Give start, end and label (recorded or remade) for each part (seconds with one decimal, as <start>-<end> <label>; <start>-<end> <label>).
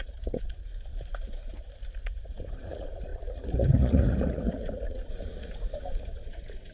0.0-0.7 remade; 0.7-2.0 recorded; 2.0-6.7 remade